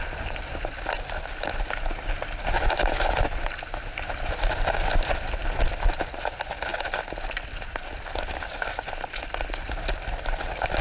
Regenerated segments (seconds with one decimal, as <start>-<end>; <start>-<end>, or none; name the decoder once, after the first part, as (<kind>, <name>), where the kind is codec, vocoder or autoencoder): none